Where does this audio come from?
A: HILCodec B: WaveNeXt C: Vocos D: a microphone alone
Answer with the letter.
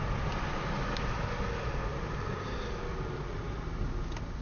D